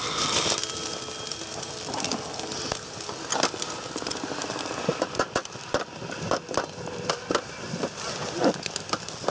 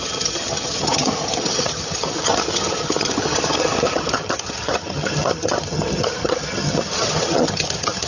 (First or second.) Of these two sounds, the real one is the first